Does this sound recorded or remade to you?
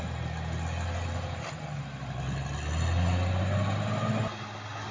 recorded